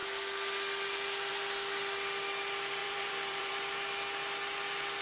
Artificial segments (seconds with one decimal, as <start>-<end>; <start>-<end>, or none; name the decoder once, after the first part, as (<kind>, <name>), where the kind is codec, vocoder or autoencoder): 2.8-3.5 (vocoder, BigVGAN v2)